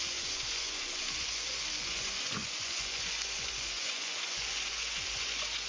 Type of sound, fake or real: fake